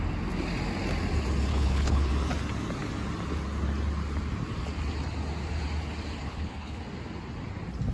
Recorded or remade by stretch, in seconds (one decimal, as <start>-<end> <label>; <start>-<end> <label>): 0.0-1.5 recorded; 1.5-2.1 remade; 2.1-6.2 recorded; 6.2-6.8 remade; 6.8-7.9 recorded